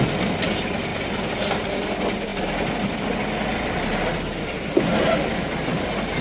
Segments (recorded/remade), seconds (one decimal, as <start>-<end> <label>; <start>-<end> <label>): 0.0-6.2 recorded